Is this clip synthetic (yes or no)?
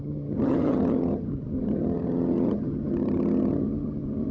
yes